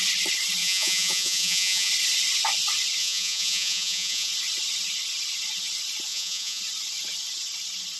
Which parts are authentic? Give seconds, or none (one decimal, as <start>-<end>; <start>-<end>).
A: 0.0-0.6; 1.9-3.0; 4.3-6.1; 6.6-8.0

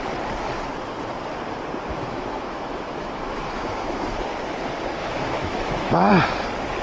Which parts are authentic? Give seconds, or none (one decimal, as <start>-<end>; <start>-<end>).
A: 0.0-1.9; 4.0-5.0; 6.1-6.8

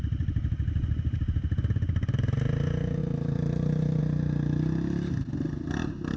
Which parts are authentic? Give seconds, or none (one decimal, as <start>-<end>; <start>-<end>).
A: 0.0-3.0; 4.0-6.2

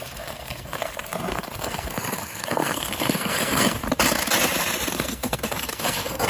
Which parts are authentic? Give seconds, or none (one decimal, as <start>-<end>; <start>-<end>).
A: 3.8-4.9

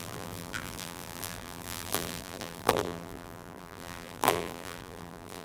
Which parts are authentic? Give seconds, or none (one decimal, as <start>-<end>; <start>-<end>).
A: none

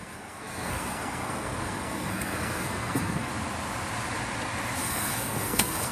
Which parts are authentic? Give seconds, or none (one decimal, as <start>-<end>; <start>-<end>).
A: 3.3-4.8

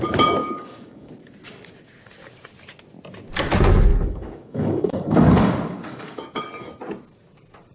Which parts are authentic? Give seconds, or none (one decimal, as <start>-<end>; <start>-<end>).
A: 0.0-0.4; 1.1-3.9; 6.4-7.7